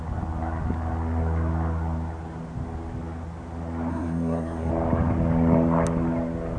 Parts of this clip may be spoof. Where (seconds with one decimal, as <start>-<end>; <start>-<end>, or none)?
3.9-4.7